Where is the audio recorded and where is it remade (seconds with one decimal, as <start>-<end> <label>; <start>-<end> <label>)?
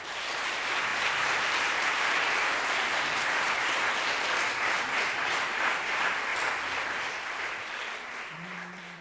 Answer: 0.0-6.3 remade; 6.3-6.9 recorded; 6.9-9.0 remade